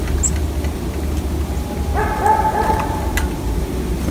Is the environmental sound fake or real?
real